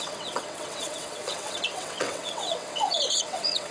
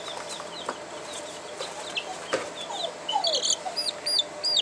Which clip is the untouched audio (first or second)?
second